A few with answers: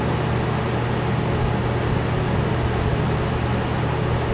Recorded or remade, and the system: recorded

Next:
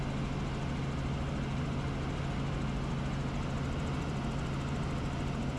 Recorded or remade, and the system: recorded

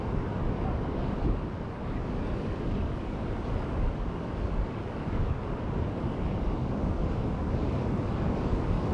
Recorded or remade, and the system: remade, codec, DAC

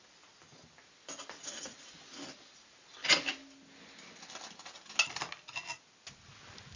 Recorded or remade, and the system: recorded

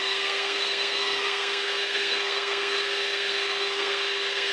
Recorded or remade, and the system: remade, codec, SNAC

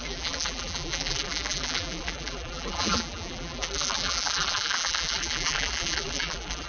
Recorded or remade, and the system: remade, vocoder, BigVGAN v2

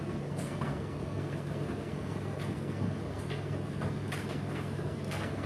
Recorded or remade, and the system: remade, codec, SNAC